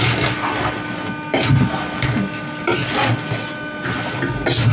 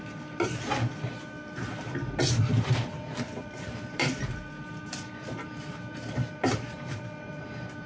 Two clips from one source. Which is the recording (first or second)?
first